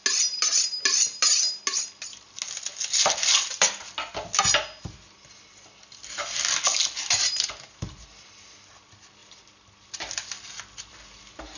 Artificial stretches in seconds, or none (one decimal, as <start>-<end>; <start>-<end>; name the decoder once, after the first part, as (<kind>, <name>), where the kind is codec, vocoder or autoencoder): none